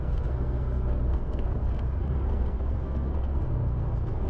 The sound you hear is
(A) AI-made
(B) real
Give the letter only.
A